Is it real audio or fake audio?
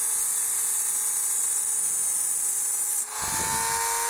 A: real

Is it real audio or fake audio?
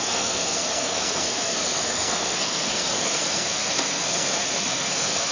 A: fake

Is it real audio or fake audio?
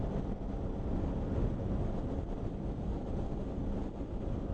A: real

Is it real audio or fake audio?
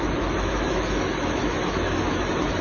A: fake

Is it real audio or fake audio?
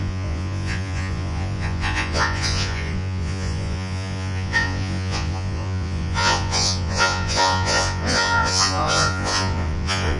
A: fake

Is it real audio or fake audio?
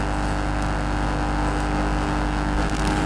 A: real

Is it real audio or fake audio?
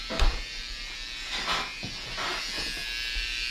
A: fake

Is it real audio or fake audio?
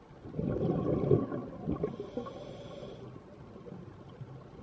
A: real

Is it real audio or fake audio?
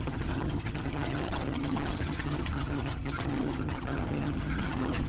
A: fake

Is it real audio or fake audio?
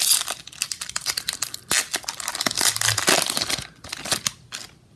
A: real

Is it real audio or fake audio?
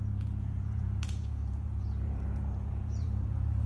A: fake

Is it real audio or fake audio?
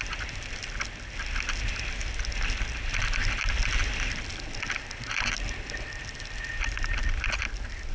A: real